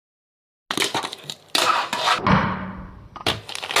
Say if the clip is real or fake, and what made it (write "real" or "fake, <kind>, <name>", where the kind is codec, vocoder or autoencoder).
real